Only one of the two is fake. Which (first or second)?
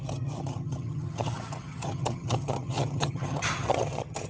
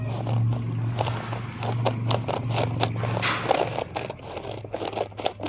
first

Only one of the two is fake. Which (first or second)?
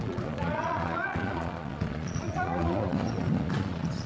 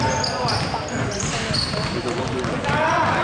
first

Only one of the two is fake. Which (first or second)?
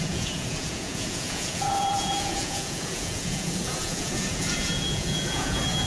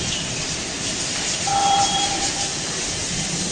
first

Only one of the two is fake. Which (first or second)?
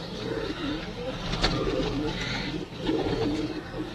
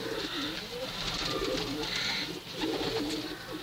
first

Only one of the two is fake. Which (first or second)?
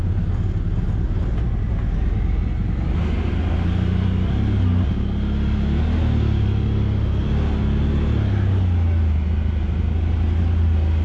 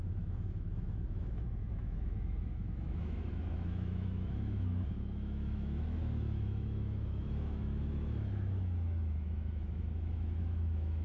second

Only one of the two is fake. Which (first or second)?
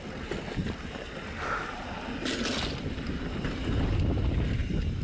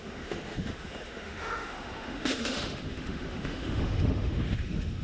second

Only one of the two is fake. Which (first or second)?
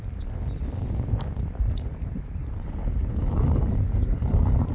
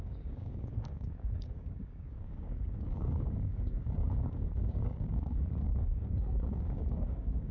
second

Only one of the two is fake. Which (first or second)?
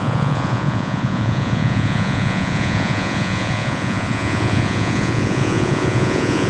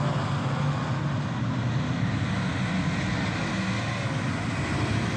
first